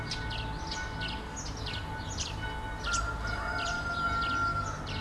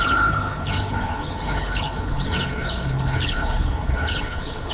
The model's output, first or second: second